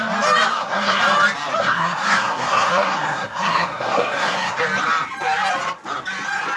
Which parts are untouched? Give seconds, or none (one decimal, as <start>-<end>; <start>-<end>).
0.0-0.5; 1.0-1.6; 4.6-6.6